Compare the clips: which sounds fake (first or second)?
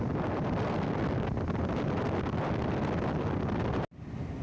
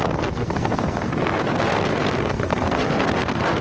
second